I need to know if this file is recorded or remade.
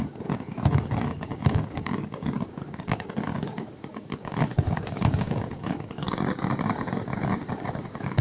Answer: remade